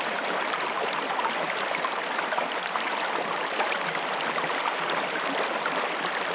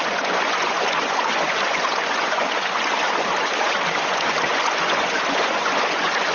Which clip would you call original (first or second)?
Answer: first